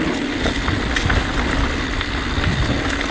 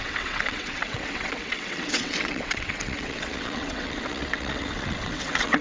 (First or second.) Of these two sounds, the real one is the first